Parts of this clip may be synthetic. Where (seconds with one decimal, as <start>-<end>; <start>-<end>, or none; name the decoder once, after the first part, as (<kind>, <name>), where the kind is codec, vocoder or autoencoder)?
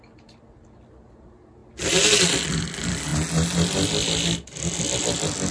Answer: none